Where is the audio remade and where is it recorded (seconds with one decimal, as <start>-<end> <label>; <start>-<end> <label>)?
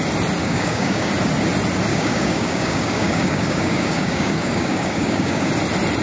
0.0-0.4 recorded; 0.4-1.1 remade; 1.1-1.9 recorded; 1.9-5.5 remade; 5.5-6.0 recorded